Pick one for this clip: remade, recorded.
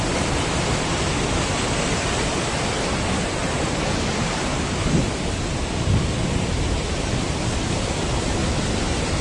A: recorded